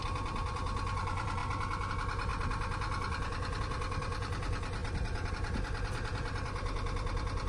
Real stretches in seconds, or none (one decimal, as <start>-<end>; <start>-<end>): 1.4-1.9